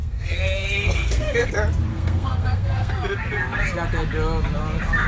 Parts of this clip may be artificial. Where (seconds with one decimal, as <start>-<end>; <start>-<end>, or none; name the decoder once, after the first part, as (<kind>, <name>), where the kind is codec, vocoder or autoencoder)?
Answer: 0.0-1.5 (codec, SNAC); 1.9-2.9